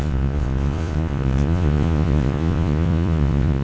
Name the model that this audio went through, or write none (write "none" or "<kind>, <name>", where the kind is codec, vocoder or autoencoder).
vocoder, Vocos